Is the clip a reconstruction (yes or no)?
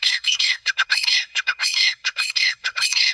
yes